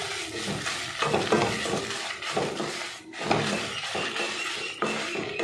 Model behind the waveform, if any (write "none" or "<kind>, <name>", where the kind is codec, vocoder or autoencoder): none